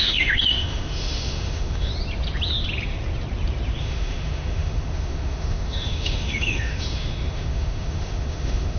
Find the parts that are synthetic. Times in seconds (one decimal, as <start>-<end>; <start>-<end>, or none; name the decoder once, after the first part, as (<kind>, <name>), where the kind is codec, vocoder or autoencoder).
0.0-1.9 (autoencoder, DAC-VAE); 3.8-8.8